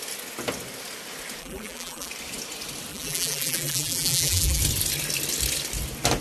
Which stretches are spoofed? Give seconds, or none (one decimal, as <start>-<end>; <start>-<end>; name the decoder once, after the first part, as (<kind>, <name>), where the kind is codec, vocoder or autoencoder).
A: 1.4-2.1 (vocoder, BigVGAN v2); 2.9-4.6